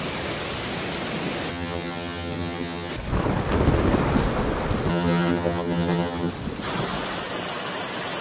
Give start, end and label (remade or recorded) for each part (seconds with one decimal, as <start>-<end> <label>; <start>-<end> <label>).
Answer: 0.0-1.5 recorded; 1.5-2.9 remade; 2.9-4.9 recorded; 4.9-6.3 remade; 6.3-8.2 recorded